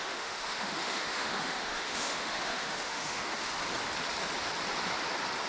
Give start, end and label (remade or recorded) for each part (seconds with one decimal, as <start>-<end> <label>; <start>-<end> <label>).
0.0-3.5 remade; 3.5-5.5 recorded